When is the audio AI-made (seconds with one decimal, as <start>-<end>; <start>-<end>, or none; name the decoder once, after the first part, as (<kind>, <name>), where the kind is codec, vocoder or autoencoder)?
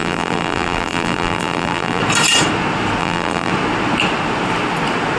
0.0-2.0 (vocoder, BigVGAN v2); 3.0-3.5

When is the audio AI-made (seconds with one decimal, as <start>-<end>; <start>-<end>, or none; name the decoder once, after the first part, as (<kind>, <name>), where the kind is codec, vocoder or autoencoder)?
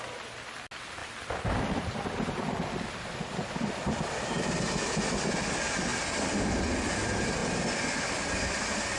none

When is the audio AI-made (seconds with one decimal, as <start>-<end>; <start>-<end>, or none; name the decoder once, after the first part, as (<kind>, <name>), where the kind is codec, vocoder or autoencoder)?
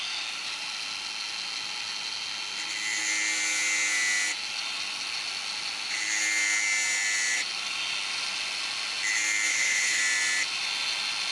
9.5-10.0 (codec, HILCodec)